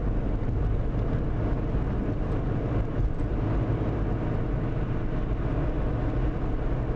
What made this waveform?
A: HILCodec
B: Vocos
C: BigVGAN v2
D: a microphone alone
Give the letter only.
D